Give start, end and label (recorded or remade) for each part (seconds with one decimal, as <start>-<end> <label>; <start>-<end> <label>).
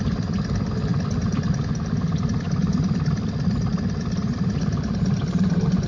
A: 0.0-0.9 recorded; 0.9-1.6 remade; 1.6-5.9 recorded